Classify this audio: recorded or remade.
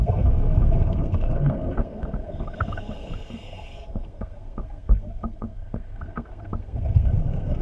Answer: remade